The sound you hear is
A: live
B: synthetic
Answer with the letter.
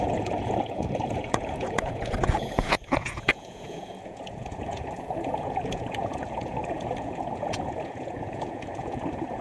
B